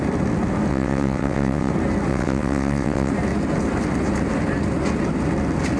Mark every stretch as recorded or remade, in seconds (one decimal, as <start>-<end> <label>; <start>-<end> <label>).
0.0-0.7 recorded; 0.7-1.7 remade; 1.7-2.1 recorded; 2.1-3.1 remade; 3.1-5.8 recorded

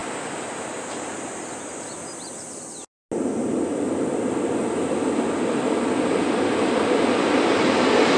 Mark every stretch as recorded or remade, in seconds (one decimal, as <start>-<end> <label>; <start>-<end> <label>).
0.0-8.2 recorded

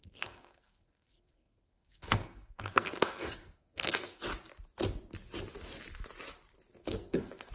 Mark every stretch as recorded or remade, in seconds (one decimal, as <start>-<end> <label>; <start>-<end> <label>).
0.0-4.2 remade; 4.2-6.8 recorded; 6.8-7.5 remade